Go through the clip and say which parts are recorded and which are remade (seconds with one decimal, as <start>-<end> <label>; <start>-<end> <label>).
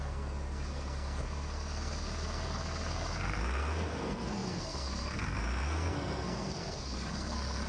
0.0-7.7 remade